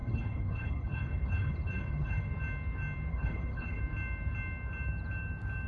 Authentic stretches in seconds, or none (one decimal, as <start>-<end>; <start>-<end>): 2.3-3.1; 3.8-5.7